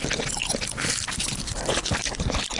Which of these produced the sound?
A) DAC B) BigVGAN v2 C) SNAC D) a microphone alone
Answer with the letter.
D